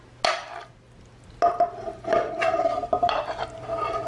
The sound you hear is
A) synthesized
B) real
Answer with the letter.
B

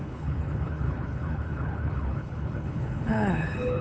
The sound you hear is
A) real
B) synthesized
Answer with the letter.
B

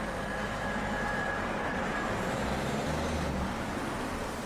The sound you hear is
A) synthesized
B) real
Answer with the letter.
B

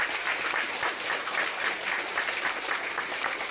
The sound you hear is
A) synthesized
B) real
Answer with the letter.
A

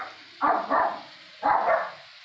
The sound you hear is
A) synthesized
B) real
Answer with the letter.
B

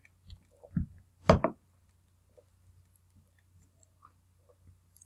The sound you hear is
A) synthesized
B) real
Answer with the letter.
B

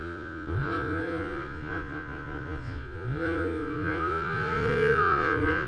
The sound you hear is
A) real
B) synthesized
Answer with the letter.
B